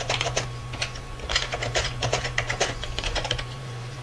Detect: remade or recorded remade